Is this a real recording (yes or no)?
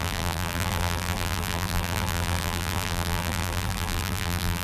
no